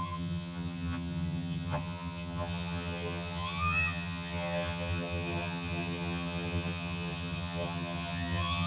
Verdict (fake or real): fake